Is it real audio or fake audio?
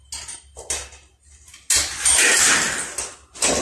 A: real